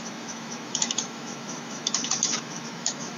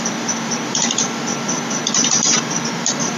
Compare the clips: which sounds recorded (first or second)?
second